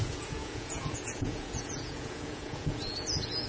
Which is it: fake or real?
fake